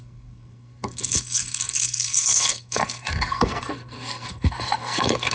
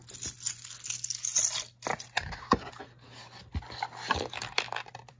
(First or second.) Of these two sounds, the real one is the second